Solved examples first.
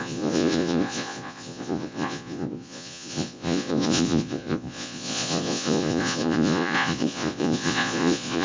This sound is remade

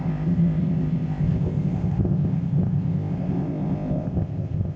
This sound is remade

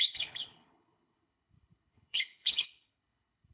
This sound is remade